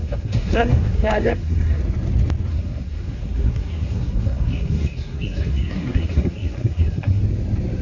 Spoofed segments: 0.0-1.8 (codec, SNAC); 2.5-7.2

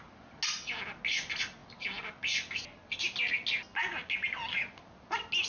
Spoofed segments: none

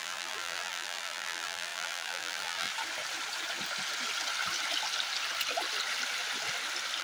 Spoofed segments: 0.0-2.7 (vocoder, BigVGAN v2)

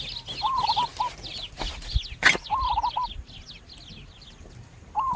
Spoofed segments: none

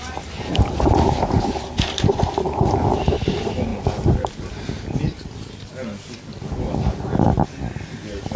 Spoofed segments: none

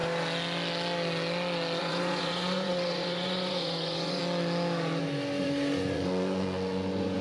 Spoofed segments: 1.8-4.2 (vocoder, Vocos); 5.4-7.2

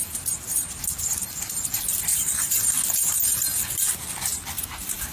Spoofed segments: 2.1-2.6 (vocoder, BigVGAN v2)

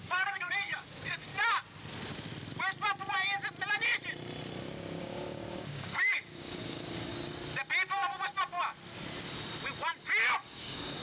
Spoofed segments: 0.0-1.3 (codec, DAC); 5.0-7.1; 10.4-11.0